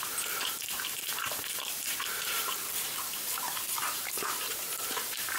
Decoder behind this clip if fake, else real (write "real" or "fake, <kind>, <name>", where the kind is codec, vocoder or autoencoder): fake, vocoder, BigVGAN v2